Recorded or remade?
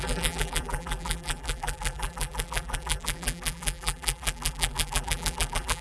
remade